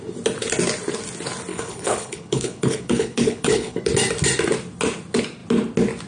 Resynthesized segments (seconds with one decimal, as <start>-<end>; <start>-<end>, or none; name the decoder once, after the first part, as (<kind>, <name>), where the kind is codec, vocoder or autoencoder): 1.5-3.8 (codec, HILCodec)